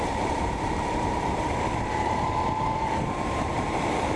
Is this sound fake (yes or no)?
yes